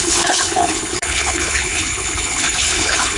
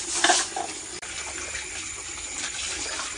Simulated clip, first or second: first